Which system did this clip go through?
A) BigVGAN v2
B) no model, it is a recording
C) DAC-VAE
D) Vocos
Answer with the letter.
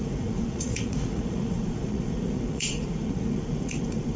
D